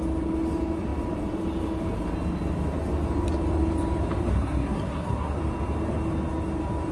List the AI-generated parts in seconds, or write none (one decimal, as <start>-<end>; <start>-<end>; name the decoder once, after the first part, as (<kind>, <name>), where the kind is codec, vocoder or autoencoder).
4.3-5.4 (codec, SNAC)